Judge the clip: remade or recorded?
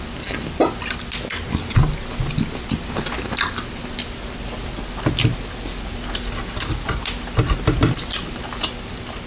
recorded